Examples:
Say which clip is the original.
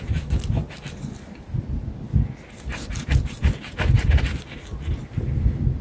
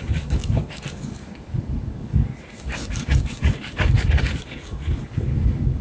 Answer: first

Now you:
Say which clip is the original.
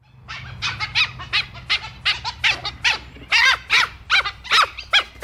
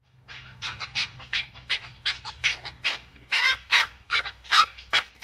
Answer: first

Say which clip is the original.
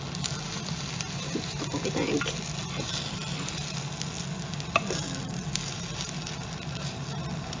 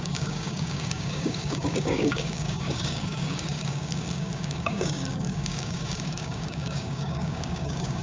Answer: first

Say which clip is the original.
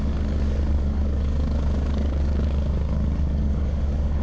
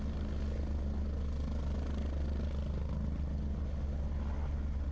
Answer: second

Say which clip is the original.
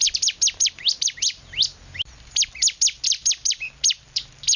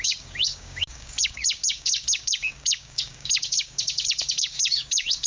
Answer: first